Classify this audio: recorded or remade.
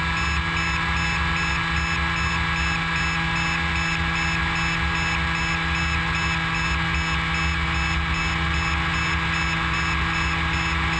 recorded